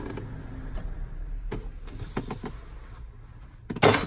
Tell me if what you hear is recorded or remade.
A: recorded